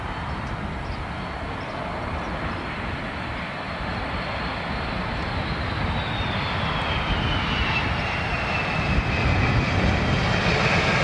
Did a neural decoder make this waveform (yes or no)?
no